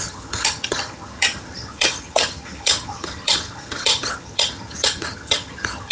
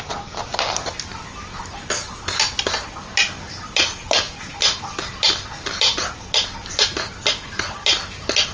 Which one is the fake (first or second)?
first